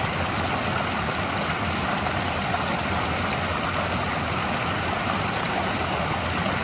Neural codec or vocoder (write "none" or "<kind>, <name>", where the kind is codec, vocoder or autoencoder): none